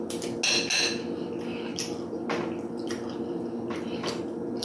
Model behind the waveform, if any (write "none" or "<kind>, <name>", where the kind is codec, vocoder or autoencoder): none